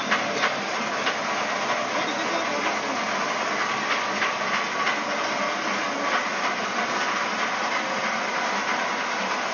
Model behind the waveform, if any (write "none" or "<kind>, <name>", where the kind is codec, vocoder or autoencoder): none